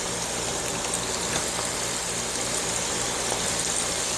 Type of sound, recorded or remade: recorded